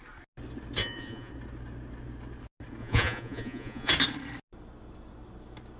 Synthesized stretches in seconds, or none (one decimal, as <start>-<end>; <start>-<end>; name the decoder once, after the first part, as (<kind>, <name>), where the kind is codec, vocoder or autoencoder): 0.8-1.3 (vocoder, Vocos); 2.8-3.9